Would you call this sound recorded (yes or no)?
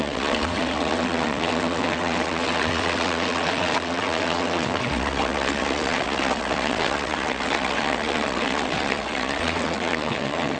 no